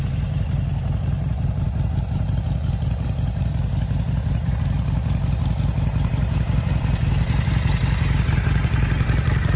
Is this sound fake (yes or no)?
yes